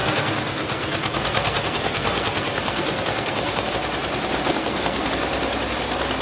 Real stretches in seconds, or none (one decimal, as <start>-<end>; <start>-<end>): 3.7-4.4; 5.1-6.2